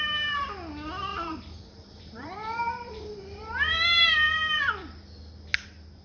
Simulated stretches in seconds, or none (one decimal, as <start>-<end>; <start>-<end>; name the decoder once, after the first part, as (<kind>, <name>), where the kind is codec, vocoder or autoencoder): 1.1-4.7 (vocoder, BigVGAN v2)